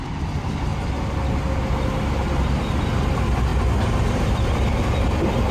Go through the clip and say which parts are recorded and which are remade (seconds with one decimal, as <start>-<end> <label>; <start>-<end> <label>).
0.0-0.7 remade; 0.7-2.8 recorded; 2.8-3.5 remade; 3.5-4.3 recorded; 4.3-5.5 remade